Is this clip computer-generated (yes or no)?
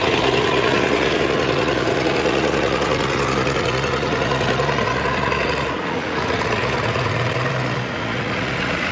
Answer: yes